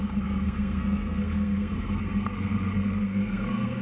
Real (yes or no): no